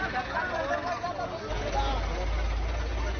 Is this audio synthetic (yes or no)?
no